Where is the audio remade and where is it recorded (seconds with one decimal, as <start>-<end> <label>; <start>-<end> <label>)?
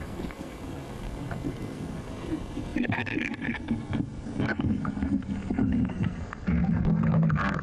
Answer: 0.0-7.6 remade